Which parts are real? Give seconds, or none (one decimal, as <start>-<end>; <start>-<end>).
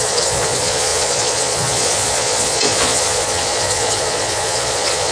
none